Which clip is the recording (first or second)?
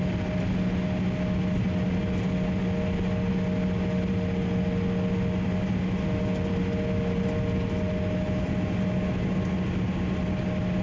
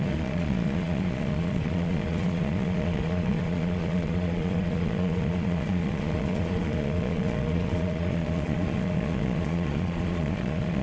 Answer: first